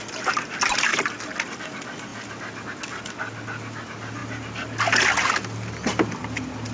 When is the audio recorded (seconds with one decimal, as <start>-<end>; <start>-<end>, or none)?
0.0-6.7